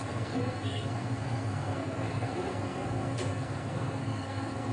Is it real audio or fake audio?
fake